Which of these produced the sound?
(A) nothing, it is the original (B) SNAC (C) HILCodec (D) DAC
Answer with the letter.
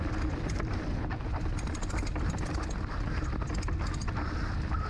A